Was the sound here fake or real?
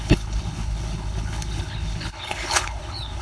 fake